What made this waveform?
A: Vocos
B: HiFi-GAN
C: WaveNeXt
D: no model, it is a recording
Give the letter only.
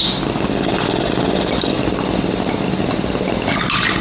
D